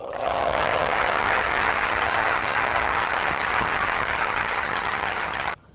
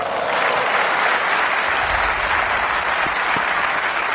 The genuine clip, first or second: second